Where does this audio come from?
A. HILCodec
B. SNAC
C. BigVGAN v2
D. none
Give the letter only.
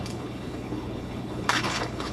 A